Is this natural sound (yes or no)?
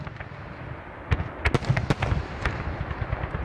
yes